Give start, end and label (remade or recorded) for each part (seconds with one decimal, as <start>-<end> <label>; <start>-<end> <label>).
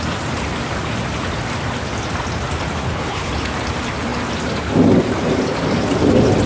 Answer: 0.0-2.8 recorded; 2.8-3.3 remade; 3.3-6.5 recorded